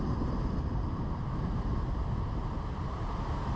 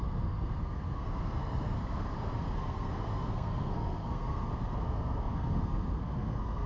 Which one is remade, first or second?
second